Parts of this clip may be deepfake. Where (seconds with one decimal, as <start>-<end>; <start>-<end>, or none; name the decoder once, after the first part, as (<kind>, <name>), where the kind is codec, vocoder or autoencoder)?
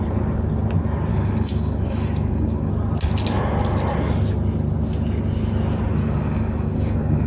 1.1-2.7 (codec, DAC); 5.9-7.3